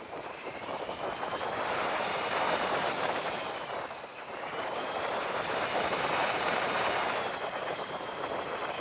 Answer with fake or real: fake